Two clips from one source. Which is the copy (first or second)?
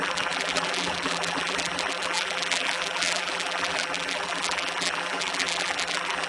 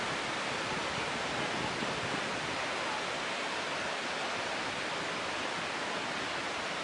first